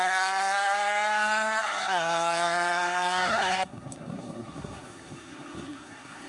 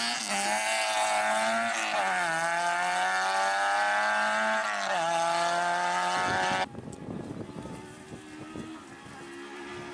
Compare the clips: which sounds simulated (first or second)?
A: first